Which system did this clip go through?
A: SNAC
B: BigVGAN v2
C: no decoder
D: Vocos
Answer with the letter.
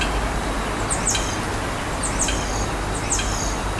C